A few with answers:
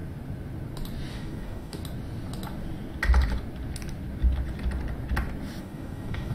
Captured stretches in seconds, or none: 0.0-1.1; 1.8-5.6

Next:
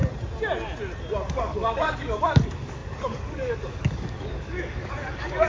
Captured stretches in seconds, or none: 0.0-1.3

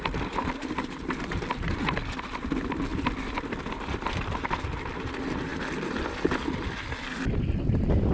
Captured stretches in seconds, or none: 0.0-8.1

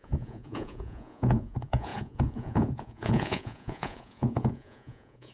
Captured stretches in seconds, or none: none

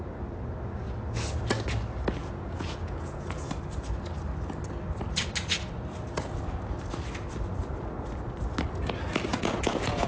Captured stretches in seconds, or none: 0.0-2.2; 3.5-9.3